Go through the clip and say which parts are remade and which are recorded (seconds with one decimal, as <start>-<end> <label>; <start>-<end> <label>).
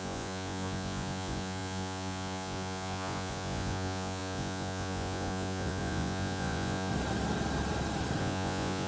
0.0-6.9 remade; 6.9-8.2 recorded; 8.2-8.9 remade